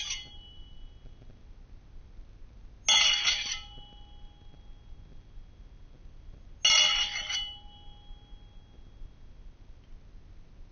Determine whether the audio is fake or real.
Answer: real